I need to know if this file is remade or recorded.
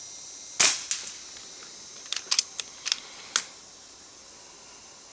recorded